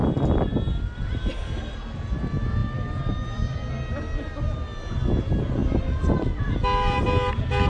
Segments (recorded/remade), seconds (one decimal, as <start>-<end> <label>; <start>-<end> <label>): 0.0-2.6 recorded; 2.6-3.7 remade; 3.7-7.7 recorded